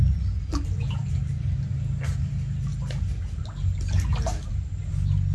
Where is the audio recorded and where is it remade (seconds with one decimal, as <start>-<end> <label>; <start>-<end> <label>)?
0.0-5.3 recorded